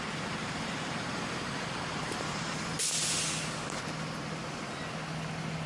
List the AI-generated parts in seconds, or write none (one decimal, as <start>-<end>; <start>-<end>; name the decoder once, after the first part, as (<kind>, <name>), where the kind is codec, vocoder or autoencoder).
0.4-2.7 (vocoder, BigVGAN v2)